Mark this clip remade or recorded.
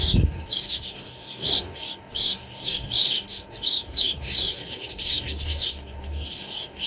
remade